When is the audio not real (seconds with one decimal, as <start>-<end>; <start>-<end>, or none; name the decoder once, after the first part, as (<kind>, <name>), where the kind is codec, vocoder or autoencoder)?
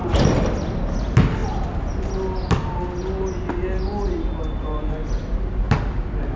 none